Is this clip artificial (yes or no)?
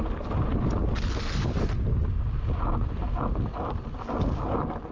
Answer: no